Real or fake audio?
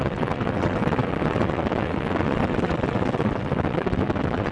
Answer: fake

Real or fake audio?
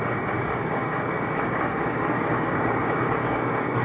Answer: fake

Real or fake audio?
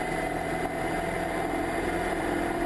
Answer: real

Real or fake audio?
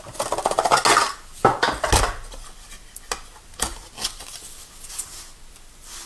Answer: real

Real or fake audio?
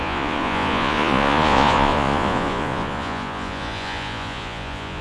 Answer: fake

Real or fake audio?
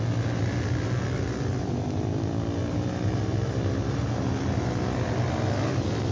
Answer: real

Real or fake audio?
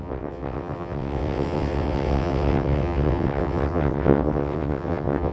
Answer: fake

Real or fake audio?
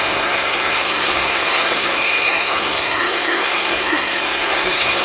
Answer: fake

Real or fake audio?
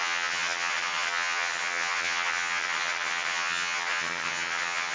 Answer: fake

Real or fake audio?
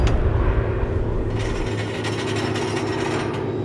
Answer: real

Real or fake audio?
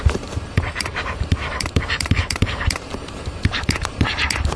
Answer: fake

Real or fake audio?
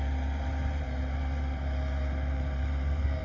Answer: fake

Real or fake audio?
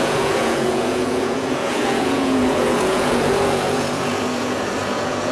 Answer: fake